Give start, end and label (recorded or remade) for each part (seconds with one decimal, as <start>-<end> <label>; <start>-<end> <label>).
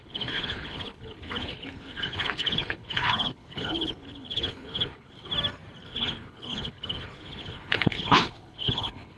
0.0-5.3 remade; 5.3-5.8 recorded; 5.8-9.2 remade